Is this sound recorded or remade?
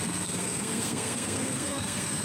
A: remade